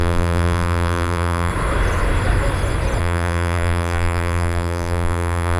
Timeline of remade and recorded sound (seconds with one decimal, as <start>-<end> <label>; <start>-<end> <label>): 0.0-1.5 remade; 1.5-3.0 recorded; 3.0-5.6 remade